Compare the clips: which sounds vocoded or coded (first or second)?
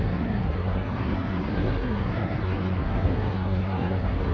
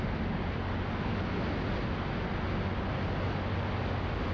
first